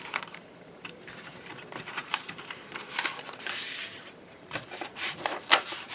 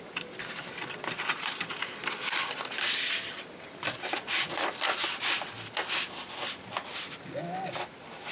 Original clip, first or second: second